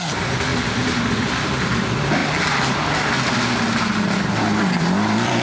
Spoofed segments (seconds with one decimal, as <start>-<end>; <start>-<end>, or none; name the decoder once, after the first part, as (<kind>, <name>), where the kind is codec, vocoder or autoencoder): 0.0-2.2 (vocoder, BigVGAN v2); 4.8-5.4